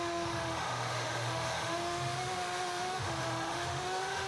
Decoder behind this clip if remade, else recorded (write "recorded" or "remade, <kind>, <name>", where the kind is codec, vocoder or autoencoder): remade, autoencoder, DAC-VAE